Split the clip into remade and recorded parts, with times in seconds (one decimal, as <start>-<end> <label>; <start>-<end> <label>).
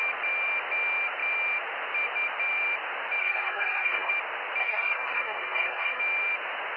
0.0-3.2 recorded; 3.2-4.1 remade; 4.1-4.6 recorded; 4.6-6.0 remade; 6.0-6.8 recorded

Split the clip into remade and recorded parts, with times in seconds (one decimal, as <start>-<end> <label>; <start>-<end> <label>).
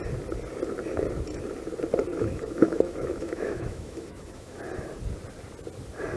0.0-2.1 recorded; 2.1-4.6 remade; 4.6-6.2 recorded